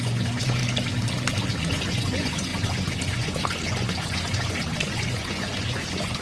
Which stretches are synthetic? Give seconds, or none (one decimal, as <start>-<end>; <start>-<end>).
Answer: 0.0-0.6; 1.7-6.2